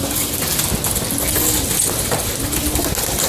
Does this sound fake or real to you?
real